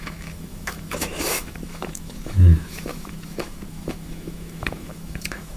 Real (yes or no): no